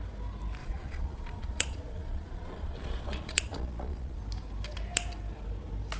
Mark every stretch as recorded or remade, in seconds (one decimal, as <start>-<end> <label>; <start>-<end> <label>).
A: 0.0-0.6 recorded; 0.6-4.2 remade; 4.2-6.0 recorded